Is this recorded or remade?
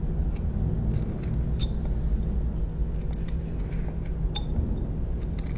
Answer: recorded